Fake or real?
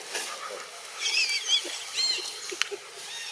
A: real